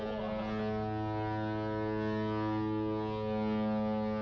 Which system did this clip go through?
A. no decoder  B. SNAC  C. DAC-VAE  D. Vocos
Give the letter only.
A